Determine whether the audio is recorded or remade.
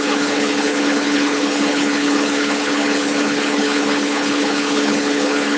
remade